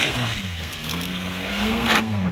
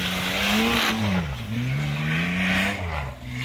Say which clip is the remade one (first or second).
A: first